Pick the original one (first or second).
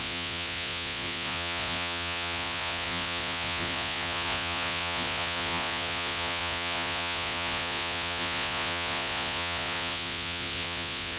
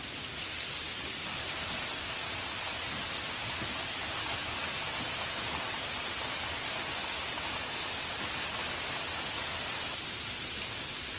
second